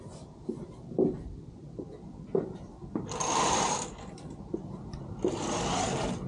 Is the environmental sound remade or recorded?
remade